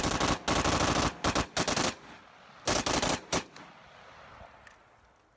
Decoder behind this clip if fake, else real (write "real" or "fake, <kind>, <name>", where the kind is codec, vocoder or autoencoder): real